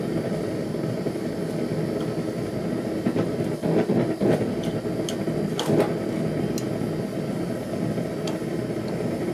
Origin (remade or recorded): recorded